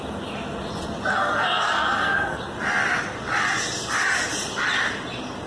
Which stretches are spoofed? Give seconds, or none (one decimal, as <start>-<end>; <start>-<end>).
1.1-2.4